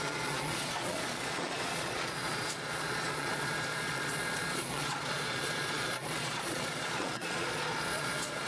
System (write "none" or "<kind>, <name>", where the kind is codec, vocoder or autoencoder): vocoder, Vocos